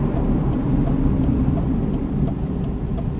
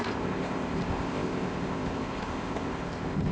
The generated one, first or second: second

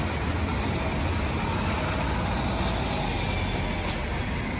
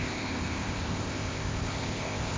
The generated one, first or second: second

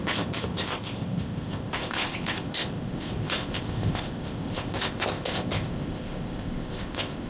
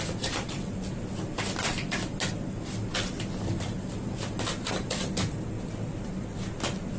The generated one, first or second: first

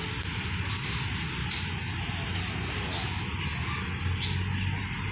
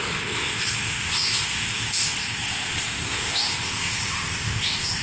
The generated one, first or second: second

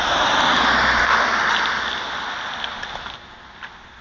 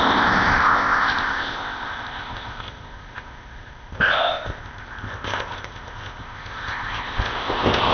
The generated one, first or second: second